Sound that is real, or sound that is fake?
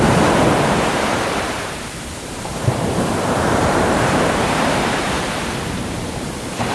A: fake